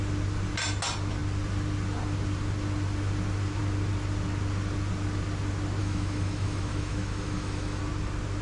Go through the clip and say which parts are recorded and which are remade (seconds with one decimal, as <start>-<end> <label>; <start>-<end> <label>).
0.0-5.8 recorded; 5.8-7.8 remade; 7.8-8.4 recorded